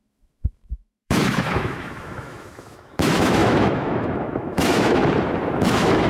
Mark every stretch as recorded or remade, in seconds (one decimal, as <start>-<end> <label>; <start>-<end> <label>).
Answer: 0.0-5.0 remade; 5.0-5.6 recorded; 5.6-6.1 remade